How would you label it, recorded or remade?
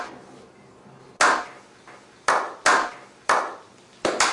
recorded